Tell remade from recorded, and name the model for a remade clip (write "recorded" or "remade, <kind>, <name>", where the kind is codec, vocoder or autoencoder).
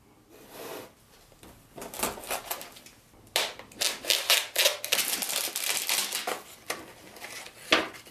recorded